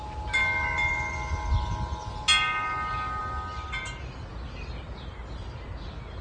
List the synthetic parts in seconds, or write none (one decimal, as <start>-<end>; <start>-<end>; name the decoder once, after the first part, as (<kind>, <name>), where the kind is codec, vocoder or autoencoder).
none